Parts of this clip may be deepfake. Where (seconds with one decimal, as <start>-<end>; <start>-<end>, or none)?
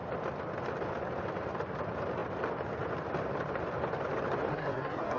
4.5-5.2